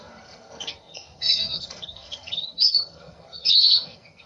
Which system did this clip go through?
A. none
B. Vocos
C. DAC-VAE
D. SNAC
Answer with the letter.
D